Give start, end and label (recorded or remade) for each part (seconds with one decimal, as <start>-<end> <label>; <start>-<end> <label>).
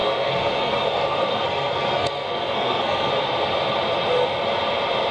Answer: 0.0-3.1 remade; 3.1-5.1 recorded